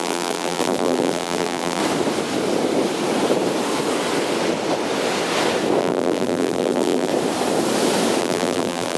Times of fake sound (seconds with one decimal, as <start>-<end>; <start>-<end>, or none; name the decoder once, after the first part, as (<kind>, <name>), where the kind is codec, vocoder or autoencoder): 0.0-1.8 (vocoder, BigVGAN v2); 5.8-7.1; 8.2-9.0